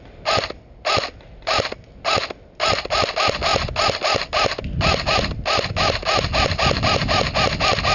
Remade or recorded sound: recorded